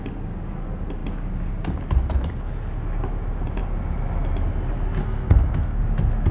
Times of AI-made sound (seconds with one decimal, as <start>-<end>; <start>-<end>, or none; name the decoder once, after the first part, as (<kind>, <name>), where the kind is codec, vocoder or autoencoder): 5.0-5.8 (codec, SNAC)